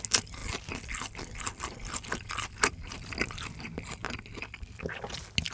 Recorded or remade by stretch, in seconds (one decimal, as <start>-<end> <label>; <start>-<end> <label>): 0.0-5.5 recorded

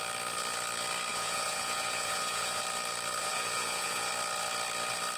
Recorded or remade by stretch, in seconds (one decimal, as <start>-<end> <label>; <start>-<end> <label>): 0.0-1.1 recorded; 1.1-2.6 remade; 2.6-3.2 recorded; 3.2-4.1 remade; 4.1-5.2 recorded

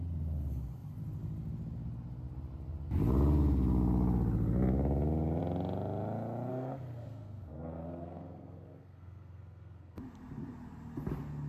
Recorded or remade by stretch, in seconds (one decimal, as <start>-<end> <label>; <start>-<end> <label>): 0.0-6.5 recorded; 6.5-10.0 remade; 10.0-11.5 recorded

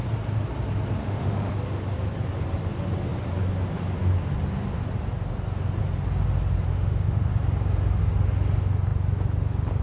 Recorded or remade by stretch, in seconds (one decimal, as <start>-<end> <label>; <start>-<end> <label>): 0.0-1.0 recorded; 1.0-1.5 remade; 1.5-6.7 recorded; 6.7-7.3 remade; 7.3-9.8 recorded

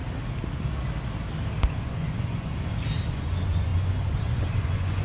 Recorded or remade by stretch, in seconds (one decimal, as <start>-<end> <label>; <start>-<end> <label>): 0.0-1.7 recorded; 1.7-2.5 remade; 2.5-3.1 recorded; 3.1-5.0 remade

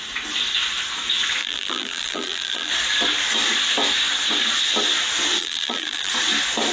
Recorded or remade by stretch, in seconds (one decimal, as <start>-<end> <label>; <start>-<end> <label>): 0.0-1.4 recorded; 1.4-2.7 remade; 2.7-5.4 recorded; 5.4-6.1 remade; 6.1-6.7 recorded

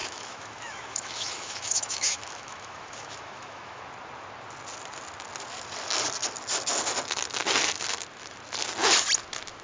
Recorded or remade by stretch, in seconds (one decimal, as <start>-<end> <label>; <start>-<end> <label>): 0.0-3.8 remade; 3.8-9.6 recorded

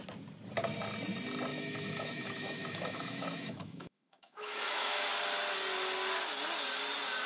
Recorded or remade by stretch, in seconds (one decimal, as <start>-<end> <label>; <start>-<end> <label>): 0.0-1.5 recorded; 1.5-5.1 remade; 5.1-7.3 recorded